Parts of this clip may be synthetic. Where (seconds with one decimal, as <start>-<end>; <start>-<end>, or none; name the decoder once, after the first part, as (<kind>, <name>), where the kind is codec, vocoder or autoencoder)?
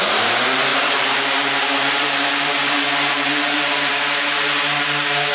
0.7-3.9 (vocoder, BigVGAN v2)